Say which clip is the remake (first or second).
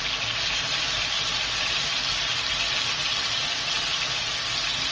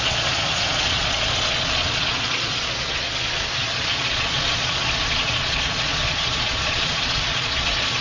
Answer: second